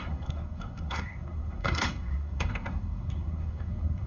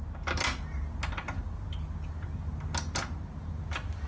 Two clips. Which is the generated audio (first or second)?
first